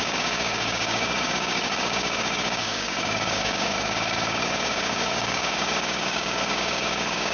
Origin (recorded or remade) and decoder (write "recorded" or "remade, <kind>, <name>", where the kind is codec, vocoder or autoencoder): remade, codec, DAC